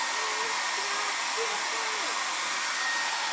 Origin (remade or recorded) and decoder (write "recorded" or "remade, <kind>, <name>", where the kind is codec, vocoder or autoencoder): recorded